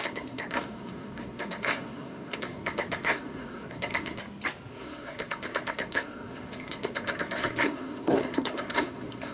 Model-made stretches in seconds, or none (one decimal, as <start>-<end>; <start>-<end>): 0.0-4.2; 4.7-9.3